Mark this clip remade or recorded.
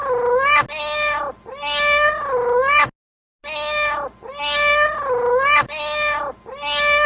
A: recorded